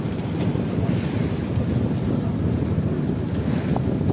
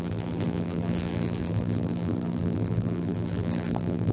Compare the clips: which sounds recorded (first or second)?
first